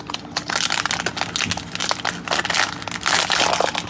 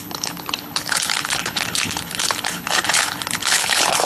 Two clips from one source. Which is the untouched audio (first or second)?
first